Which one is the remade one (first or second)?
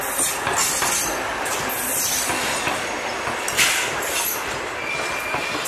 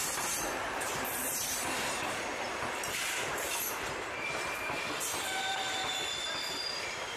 second